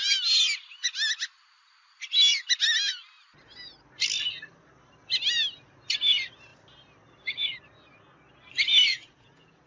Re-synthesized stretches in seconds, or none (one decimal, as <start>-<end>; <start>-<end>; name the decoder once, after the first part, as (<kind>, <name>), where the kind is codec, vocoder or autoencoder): 8.9-9.7 (vocoder, Vocos)